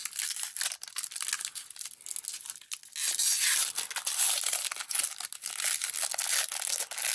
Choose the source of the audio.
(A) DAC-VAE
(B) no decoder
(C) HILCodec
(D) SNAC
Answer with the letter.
B